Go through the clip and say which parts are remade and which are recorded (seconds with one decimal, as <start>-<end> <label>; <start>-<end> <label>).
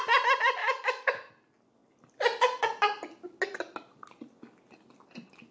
0.0-0.6 recorded; 0.6-1.3 remade; 1.3-5.5 recorded